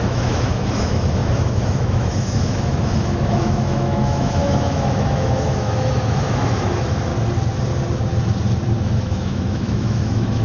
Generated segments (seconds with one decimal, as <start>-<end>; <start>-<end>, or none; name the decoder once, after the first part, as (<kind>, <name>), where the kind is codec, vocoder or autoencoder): 0.0-7.1 (autoencoder, DAC-VAE); 8.8-10.4